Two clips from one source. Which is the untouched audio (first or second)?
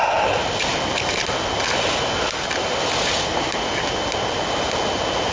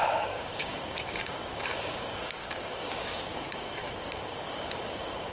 first